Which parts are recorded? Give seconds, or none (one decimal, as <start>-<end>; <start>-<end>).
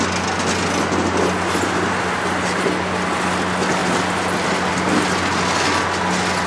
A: 0.0-6.5